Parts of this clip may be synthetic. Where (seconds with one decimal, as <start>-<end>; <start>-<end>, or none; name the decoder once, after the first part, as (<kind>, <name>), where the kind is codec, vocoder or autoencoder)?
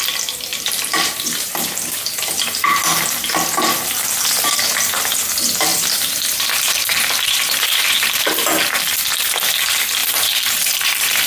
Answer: 0.5-1.5 (vocoder, BigVGAN v2); 5.7-8.5; 10.0-11.3